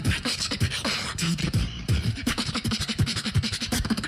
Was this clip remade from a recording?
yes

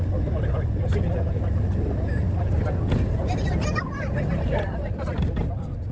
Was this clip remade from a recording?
no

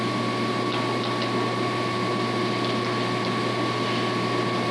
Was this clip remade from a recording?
no